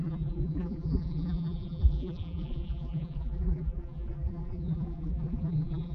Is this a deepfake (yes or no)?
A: yes